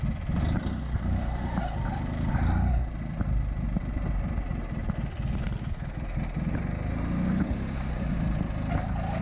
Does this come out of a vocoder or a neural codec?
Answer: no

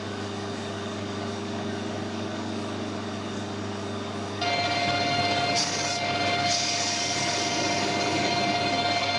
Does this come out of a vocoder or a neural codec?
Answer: yes